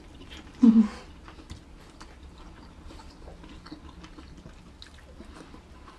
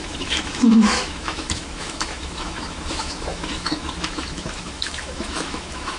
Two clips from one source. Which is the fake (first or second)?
second